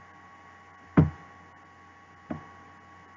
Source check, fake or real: real